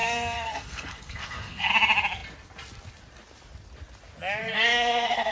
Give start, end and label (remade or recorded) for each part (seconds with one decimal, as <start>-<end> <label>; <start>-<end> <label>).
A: 0.0-1.7 remade; 1.7-4.4 recorded; 4.4-5.3 remade